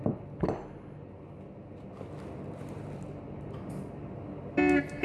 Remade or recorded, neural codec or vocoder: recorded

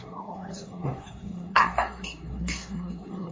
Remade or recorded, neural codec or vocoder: remade, codec, SNAC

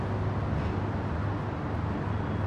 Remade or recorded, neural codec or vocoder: recorded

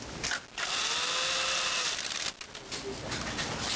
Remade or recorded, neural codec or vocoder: recorded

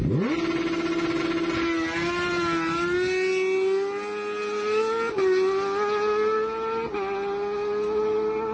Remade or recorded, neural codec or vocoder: recorded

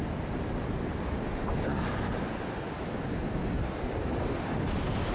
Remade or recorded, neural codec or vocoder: recorded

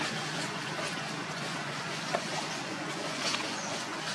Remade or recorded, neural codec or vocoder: remade, vocoder, Vocos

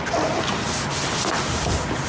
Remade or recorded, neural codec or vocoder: recorded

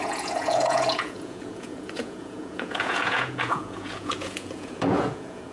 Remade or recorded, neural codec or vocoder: remade, vocoder, Vocos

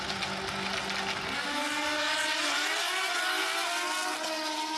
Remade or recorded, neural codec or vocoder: recorded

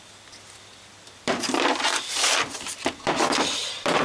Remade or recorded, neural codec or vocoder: remade, vocoder, BigVGAN v2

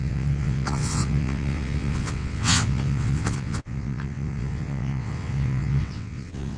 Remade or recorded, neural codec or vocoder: remade, vocoder, WaveNeXt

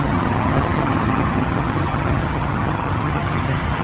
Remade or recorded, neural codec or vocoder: remade, vocoder, HiFi-GAN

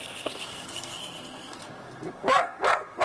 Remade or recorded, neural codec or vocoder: remade, codec, SNAC